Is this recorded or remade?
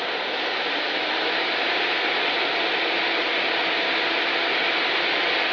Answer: recorded